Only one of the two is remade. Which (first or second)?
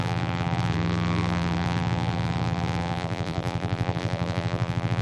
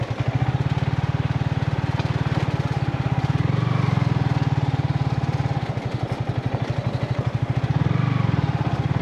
first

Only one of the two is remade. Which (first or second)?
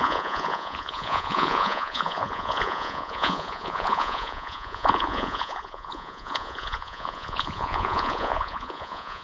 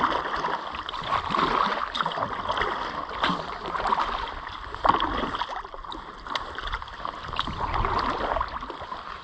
first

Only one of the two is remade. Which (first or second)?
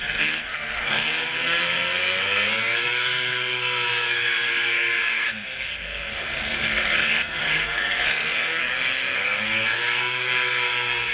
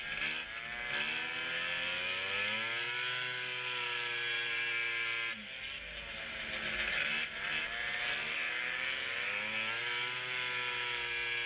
first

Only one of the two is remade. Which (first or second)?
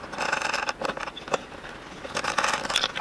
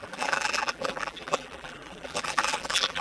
second